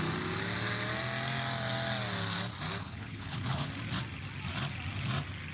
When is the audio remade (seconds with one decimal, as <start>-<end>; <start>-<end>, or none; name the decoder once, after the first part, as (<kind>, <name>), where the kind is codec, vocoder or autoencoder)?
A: 2.8-3.7 (codec, HILCodec)